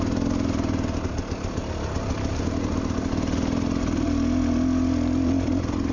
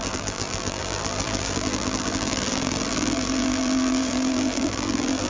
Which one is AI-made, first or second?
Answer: second